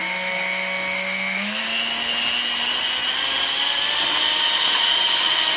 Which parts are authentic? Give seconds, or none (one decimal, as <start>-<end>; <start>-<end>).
1.6-5.6